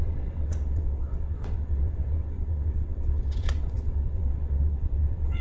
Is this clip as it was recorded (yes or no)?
no